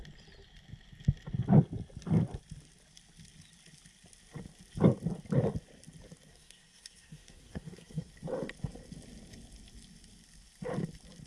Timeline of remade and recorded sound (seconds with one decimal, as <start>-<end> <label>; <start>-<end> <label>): 0.0-6.3 recorded; 6.3-8.1 remade; 8.1-11.3 recorded